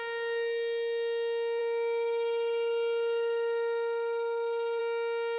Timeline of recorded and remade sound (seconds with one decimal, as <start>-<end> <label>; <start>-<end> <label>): 0.0-1.6 recorded; 1.6-4.8 remade; 4.8-5.4 recorded

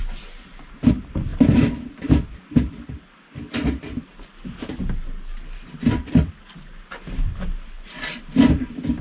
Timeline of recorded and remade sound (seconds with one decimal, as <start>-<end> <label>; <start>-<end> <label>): 0.0-9.0 recorded

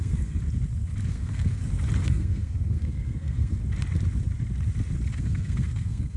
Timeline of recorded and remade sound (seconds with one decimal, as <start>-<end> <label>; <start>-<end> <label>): 0.0-0.4 remade; 0.4-1.1 recorded; 1.1-1.6 remade; 1.6-2.1 recorded; 2.1-3.6 remade; 3.6-5.2 recorded; 5.2-6.2 remade

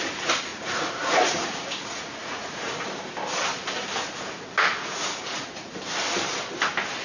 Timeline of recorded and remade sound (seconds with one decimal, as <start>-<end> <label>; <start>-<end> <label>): 0.0-0.5 recorded; 0.5-2.9 remade; 2.9-4.7 recorded; 4.7-5.7 remade; 5.7-7.0 recorded

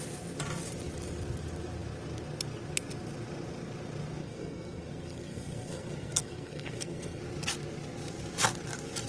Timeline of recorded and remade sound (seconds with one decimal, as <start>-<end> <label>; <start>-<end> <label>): 0.0-4.2 recorded; 4.2-7.2 remade; 7.2-9.1 recorded

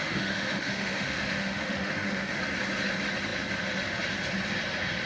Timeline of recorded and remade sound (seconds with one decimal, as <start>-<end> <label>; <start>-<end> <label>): 0.0-2.4 remade; 2.4-5.1 recorded